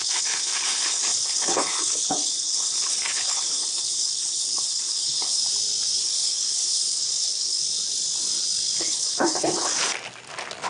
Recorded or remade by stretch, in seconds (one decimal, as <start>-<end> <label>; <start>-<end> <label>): 0.0-5.4 remade; 5.4-6.0 recorded; 6.0-7.6 remade; 7.6-8.8 recorded; 8.8-9.7 remade; 9.7-10.7 recorded